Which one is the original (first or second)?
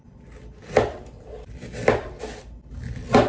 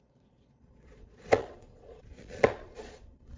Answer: first